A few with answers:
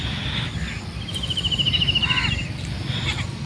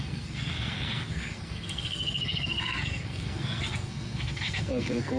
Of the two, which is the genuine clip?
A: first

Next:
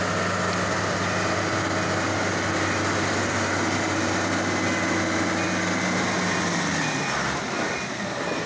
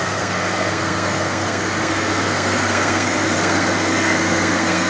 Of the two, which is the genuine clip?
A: first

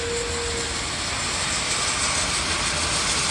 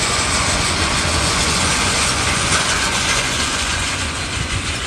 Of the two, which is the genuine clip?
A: first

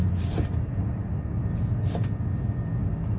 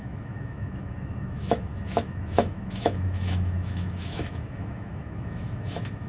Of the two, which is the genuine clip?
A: first